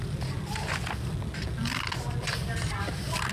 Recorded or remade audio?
recorded